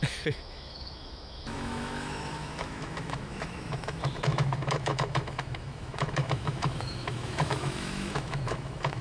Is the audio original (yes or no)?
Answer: no